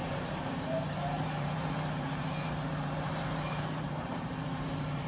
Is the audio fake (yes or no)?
yes